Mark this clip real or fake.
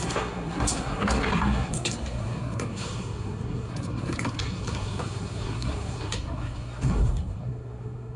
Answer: fake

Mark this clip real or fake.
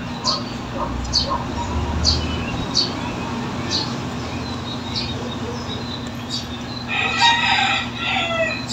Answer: real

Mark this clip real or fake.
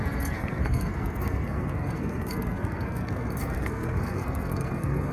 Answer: fake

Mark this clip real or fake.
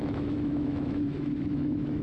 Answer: fake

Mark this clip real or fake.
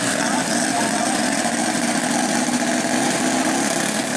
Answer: real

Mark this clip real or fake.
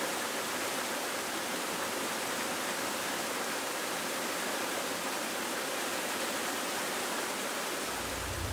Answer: fake